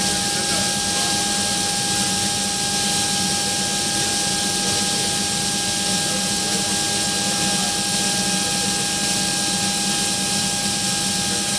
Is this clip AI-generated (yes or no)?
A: no